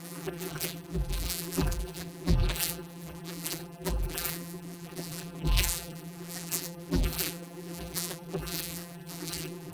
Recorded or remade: remade